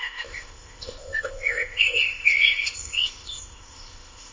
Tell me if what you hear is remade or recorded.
remade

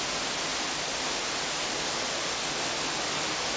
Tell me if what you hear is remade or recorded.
recorded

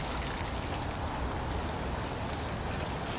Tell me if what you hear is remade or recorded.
recorded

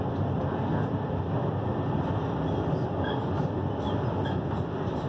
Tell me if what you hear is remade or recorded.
recorded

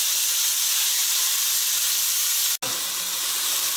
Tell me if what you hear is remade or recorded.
recorded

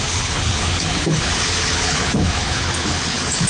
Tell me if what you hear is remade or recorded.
remade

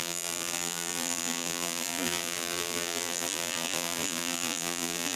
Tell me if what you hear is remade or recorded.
remade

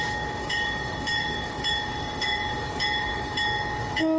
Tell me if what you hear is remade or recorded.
remade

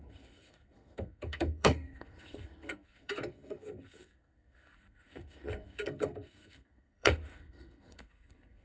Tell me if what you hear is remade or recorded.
remade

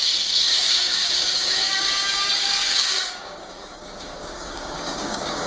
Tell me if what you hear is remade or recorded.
remade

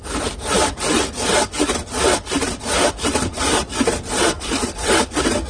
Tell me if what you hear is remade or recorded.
recorded